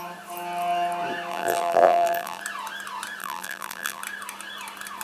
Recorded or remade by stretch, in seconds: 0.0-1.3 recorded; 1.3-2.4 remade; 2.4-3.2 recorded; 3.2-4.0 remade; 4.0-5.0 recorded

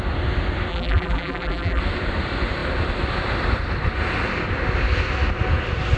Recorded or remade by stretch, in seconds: 0.0-0.7 recorded; 0.7-1.8 remade; 1.8-6.0 recorded

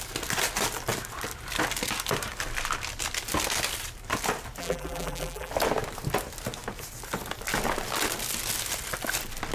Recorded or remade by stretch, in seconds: 0.0-4.6 recorded; 4.6-5.5 remade; 5.5-9.5 recorded

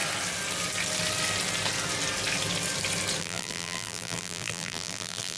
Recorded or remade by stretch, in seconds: 0.0-3.2 recorded; 3.2-5.4 remade

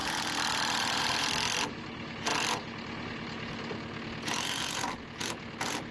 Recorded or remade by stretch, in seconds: 0.0-5.9 recorded

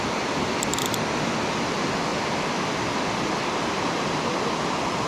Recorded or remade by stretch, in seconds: 0.0-5.1 recorded

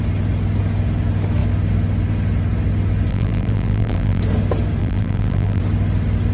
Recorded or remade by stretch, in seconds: 0.0-3.1 recorded; 3.1-4.2 remade; 4.2-4.8 recorded; 4.8-5.6 remade; 5.6-6.3 recorded

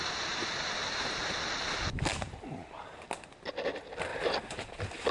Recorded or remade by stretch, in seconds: 0.0-2.1 recorded; 2.1-2.8 remade; 2.8-5.1 recorded